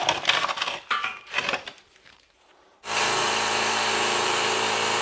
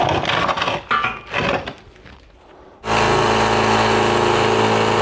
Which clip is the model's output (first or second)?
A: first